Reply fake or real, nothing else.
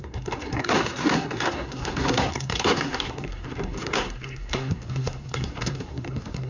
fake